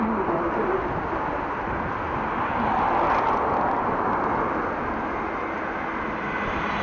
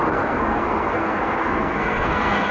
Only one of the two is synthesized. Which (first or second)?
second